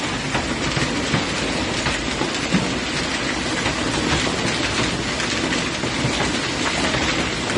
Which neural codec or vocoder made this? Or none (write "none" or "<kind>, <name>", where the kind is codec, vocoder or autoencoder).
none